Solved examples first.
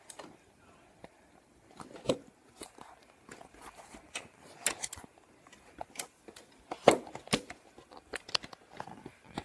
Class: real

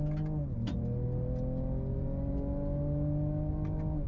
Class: real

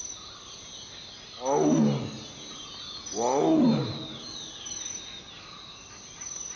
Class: real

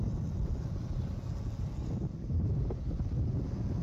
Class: real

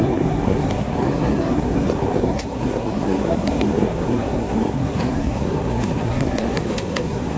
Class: fake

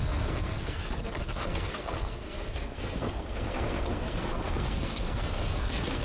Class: fake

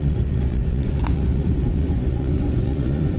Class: fake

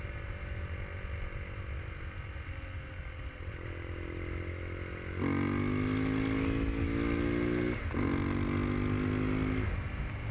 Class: real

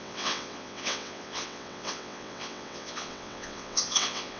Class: fake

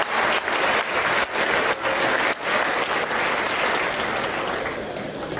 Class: real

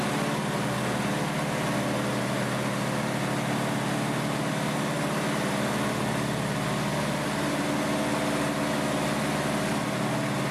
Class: real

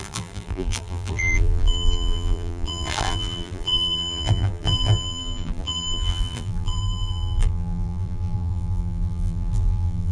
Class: fake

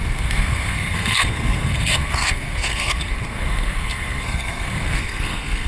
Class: fake